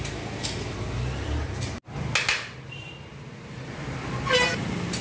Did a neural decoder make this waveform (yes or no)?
no